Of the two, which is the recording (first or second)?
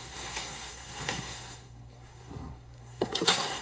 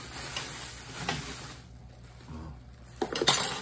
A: second